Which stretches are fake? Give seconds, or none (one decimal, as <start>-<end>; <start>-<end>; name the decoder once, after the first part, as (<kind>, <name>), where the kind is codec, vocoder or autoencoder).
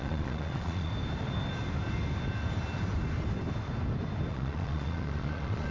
0.0-0.9 (vocoder, Vocos); 4.3-5.7